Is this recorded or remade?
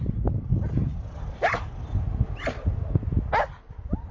recorded